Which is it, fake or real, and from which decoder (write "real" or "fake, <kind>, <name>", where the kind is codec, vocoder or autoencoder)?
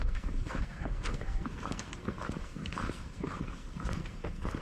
fake, codec, SNAC